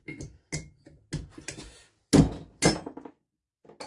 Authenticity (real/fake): real